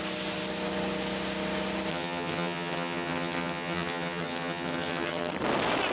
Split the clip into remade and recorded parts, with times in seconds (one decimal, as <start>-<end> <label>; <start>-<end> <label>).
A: 0.0-1.9 recorded; 1.9-5.3 remade; 5.3-5.9 recorded